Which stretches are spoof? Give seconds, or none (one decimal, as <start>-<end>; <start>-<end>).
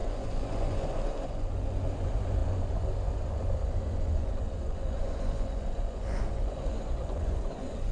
0.0-7.9